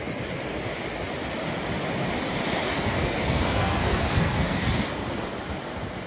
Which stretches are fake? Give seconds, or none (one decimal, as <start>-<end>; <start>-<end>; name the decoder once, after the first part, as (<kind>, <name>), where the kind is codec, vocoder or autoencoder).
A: 2.7-4.7 (codec, SNAC)